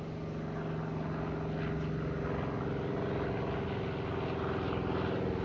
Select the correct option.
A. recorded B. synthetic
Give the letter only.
A